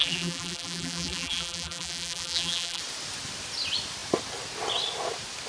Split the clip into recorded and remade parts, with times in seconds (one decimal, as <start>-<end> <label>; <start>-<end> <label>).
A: 0.0-2.8 remade; 2.8-5.5 recorded